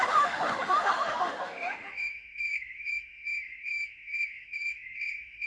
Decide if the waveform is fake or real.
fake